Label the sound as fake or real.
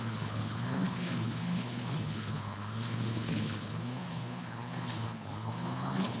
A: fake